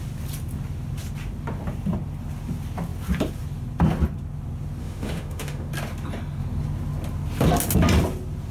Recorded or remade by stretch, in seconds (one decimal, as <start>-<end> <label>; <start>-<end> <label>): 0.0-4.8 recorded; 4.8-5.7 remade; 5.7-8.5 recorded